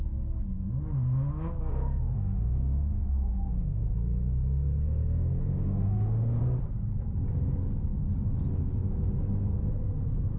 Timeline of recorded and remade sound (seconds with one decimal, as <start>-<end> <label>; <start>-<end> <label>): 0.0-1.7 recorded; 1.7-3.8 remade; 3.8-5.5 recorded; 5.5-6.4 remade; 6.4-10.4 recorded